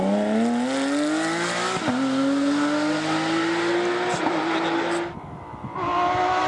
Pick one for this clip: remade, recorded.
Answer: recorded